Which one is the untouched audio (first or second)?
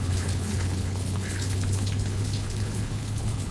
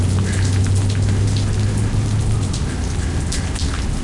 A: second